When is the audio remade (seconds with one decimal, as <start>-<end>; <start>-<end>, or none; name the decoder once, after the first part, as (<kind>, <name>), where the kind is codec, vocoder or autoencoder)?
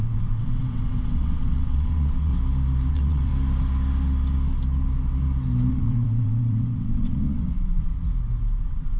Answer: 0.0-2.3 (vocoder, WaveNeXt); 2.9-3.3; 5.7-7.9; 8.6-9.0